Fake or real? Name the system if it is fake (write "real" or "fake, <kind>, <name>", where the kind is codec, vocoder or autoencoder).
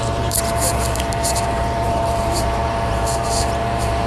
fake, vocoder, BigVGAN v2